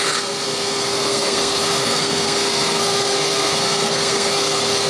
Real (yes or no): no